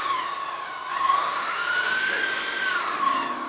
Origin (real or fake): real